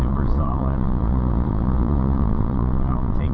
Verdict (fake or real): fake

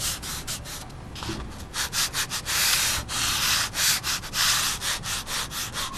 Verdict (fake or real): real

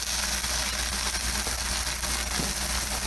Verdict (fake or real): real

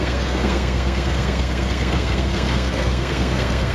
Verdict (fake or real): fake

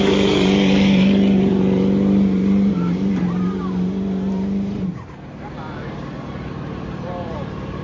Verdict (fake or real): fake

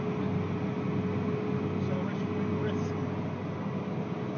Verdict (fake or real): real